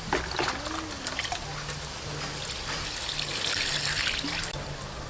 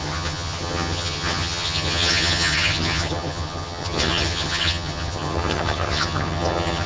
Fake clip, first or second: second